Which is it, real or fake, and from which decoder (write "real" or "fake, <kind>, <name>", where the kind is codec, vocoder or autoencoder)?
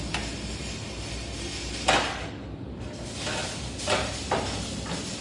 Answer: real